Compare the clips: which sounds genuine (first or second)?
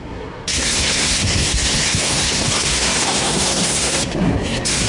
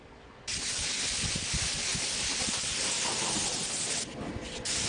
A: second